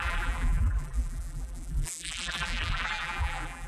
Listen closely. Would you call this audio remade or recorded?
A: remade